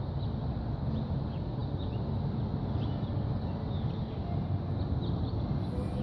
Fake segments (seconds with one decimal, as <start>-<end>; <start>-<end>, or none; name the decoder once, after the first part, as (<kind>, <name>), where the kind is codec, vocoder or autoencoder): none